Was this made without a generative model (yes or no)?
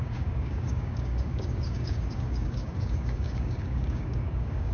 no